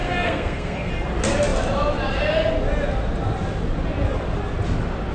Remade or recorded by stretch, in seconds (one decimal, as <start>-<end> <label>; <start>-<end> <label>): 0.0-0.9 remade; 0.9-5.1 recorded